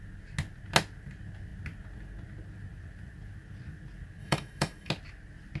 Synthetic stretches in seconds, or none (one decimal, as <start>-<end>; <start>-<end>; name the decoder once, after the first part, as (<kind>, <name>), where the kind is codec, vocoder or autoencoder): 4.2-4.9 (autoencoder, DAC-VAE)